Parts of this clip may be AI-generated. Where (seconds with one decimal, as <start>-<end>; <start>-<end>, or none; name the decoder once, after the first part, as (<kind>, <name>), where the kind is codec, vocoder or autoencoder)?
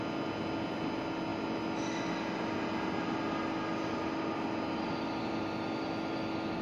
none